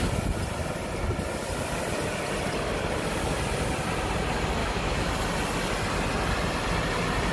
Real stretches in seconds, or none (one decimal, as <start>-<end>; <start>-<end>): 0.0-4.6; 5.1-7.3